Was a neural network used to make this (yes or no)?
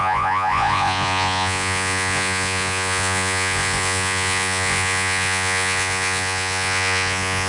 yes